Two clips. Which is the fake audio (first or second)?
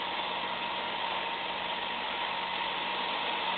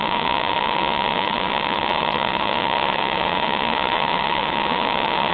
second